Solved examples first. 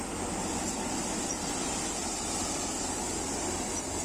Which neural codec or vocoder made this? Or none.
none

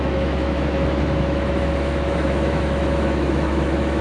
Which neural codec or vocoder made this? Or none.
autoencoder, DAC-VAE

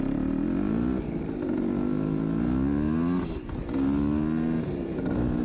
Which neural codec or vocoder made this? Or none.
none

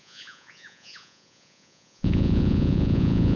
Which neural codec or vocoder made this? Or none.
vocoder, Vocos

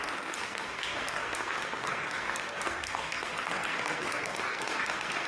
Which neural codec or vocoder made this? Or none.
codec, SNAC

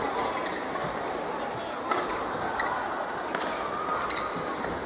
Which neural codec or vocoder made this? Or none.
none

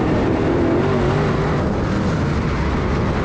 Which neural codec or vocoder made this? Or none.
none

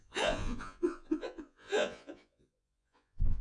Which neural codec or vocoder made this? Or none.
vocoder, Vocos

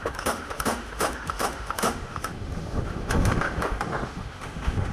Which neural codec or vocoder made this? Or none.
autoencoder, DAC-VAE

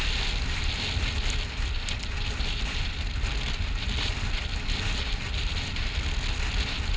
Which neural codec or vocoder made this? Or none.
none